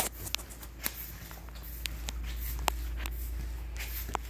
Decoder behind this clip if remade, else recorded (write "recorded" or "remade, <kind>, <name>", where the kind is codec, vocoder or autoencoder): recorded